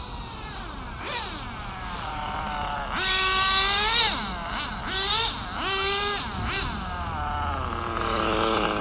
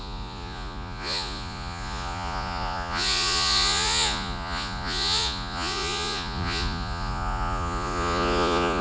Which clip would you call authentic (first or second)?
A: first